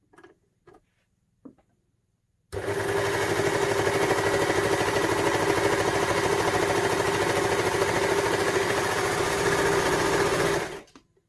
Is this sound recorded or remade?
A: recorded